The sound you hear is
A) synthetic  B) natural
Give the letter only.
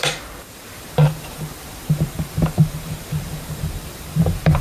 A